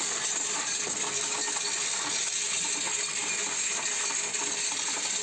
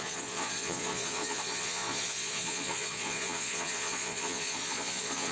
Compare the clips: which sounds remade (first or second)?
second